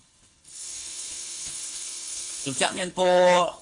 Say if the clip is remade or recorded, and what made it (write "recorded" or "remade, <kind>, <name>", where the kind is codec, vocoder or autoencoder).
remade, codec, HILCodec